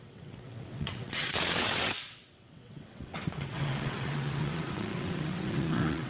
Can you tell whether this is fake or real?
fake